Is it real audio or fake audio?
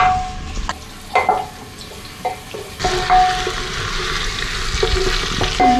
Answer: real